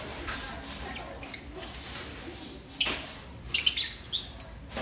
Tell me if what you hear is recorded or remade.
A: recorded